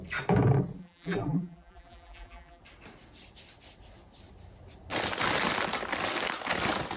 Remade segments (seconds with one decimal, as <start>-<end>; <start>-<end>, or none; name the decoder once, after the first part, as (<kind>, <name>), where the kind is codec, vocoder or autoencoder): 0.8-2.6 (vocoder, BigVGAN v2)